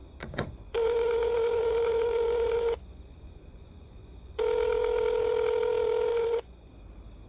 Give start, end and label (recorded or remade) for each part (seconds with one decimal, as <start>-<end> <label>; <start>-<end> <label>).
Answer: 0.0-4.4 remade; 4.4-6.1 recorded; 6.1-6.7 remade; 6.7-7.3 recorded

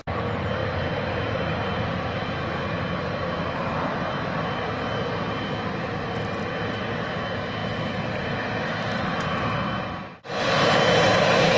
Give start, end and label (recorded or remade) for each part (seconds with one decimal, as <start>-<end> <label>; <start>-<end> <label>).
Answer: 0.0-11.6 recorded